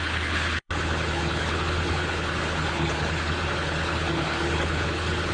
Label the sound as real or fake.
fake